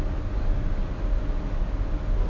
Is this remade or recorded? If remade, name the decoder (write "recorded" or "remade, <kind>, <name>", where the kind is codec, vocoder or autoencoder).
recorded